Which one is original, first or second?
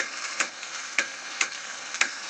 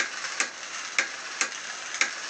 second